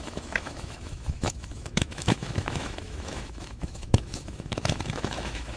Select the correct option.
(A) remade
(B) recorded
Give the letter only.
A